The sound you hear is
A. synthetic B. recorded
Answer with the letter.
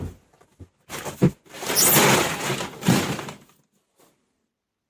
B